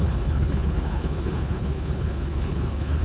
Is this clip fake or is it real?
fake